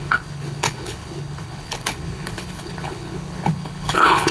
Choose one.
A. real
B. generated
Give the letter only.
B